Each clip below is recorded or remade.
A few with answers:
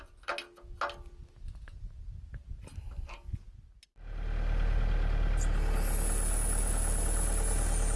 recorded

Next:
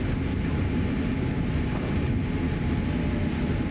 recorded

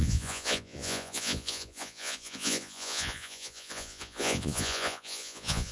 remade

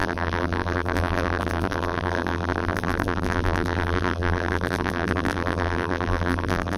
remade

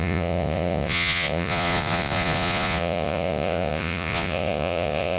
remade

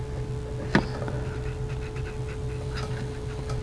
recorded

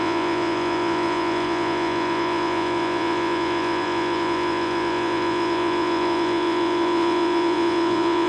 remade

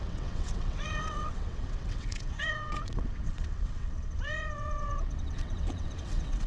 remade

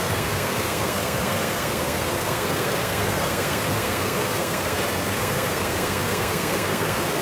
remade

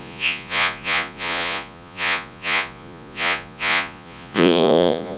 remade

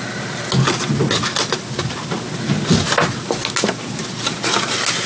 recorded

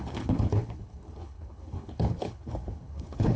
remade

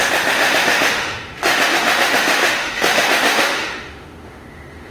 remade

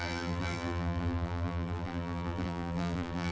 remade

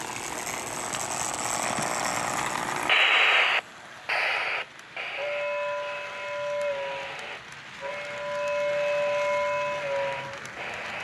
recorded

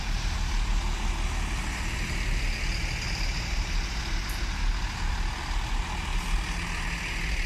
recorded